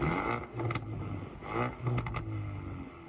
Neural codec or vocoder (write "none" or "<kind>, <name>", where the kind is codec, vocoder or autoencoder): none